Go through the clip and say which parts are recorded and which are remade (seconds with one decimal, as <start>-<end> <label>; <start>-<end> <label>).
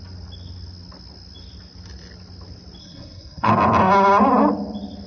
0.0-2.8 recorded; 2.8-3.5 remade; 3.5-5.1 recorded